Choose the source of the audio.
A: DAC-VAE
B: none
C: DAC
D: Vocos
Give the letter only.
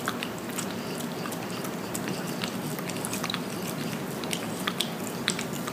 B